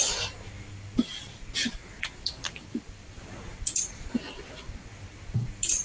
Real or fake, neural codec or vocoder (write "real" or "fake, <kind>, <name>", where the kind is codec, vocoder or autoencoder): fake, vocoder, BigVGAN v2